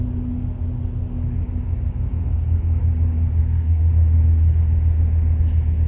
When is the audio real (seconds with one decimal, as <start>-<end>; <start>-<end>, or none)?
0.0-2.1; 2.8-3.4; 3.9-5.9